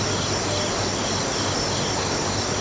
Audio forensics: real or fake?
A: real